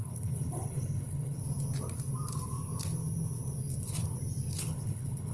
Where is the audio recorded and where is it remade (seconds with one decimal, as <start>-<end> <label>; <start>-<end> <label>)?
0.0-1.4 remade; 1.4-4.6 recorded; 4.6-5.3 remade